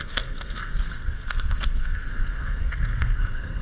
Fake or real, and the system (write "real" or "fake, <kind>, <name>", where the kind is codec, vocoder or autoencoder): fake, codec, SNAC